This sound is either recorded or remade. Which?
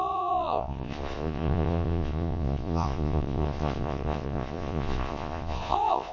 remade